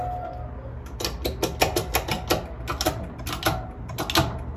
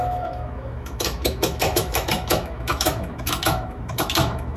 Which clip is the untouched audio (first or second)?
first